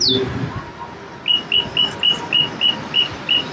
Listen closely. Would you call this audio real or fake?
real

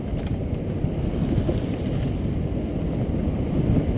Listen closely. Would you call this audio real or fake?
real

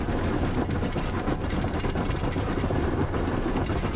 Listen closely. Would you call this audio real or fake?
real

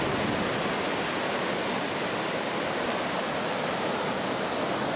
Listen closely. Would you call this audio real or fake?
real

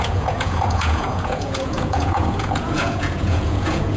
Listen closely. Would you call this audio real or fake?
fake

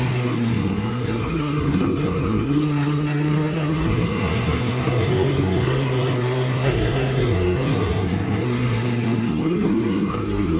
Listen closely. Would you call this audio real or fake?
fake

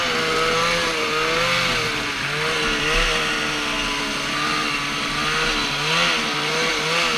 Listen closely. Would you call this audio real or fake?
real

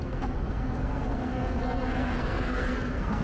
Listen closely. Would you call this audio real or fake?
fake